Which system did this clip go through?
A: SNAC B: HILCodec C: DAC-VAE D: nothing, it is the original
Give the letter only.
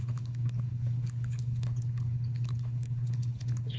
B